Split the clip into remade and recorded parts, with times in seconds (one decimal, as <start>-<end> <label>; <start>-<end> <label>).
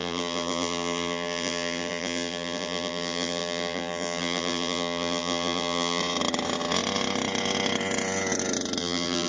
0.0-6.0 remade; 6.0-8.8 recorded; 8.8-9.3 remade